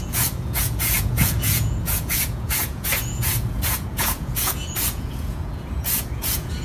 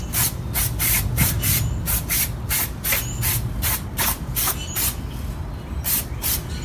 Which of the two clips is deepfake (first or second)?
first